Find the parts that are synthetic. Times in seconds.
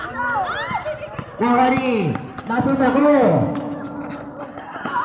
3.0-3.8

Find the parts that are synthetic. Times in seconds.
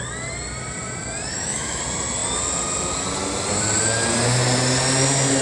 1.3-1.8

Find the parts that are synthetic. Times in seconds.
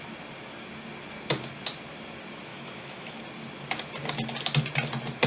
2.5-3.2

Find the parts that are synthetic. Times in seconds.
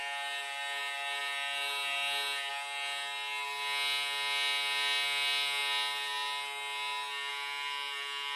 none